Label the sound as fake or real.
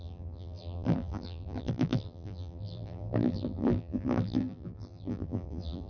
fake